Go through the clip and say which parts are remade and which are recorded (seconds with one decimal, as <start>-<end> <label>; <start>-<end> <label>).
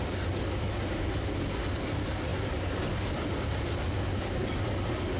0.0-5.2 recorded